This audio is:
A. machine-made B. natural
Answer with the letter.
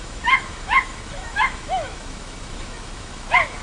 A